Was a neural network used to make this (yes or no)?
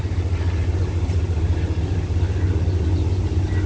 no